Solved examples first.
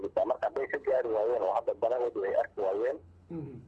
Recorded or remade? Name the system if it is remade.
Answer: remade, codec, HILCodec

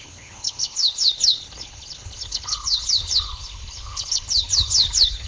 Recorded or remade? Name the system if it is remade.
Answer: remade, codec, HILCodec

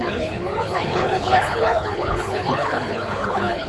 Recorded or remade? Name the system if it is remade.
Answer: remade, codec, HILCodec